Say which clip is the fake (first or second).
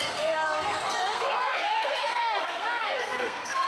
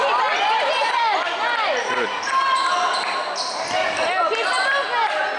first